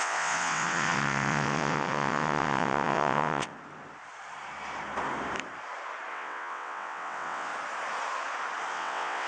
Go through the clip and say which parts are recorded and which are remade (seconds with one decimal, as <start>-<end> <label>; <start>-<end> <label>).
0.0-3.5 remade; 3.5-6.1 recorded; 6.1-7.5 remade; 7.5-8.7 recorded; 8.7-9.3 remade